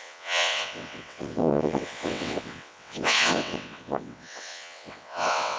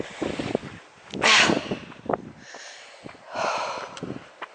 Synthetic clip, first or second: first